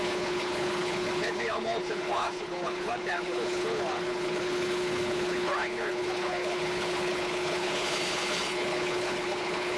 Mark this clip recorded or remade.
remade